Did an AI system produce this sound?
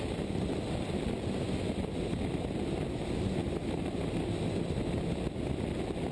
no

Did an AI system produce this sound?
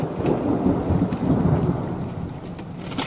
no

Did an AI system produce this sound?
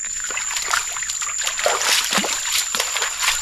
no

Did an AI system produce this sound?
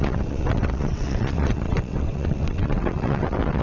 yes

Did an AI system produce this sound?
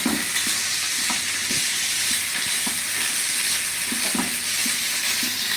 no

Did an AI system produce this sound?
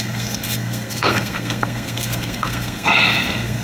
yes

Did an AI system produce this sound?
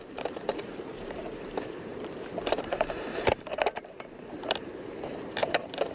yes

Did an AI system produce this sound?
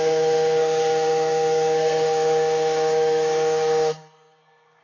yes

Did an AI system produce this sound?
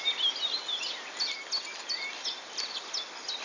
no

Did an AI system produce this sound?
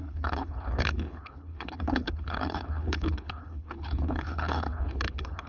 yes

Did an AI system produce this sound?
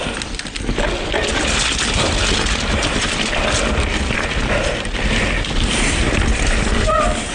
no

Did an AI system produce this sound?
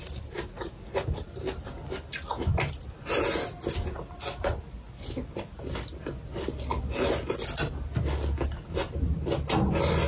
no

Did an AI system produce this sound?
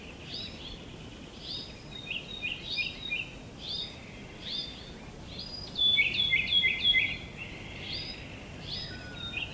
no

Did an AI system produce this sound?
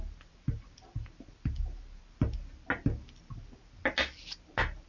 no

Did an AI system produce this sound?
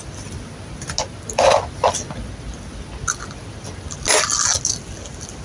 no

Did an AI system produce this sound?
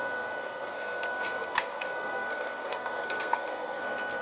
yes